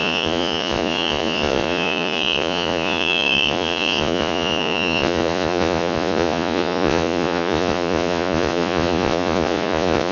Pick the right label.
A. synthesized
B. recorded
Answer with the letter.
A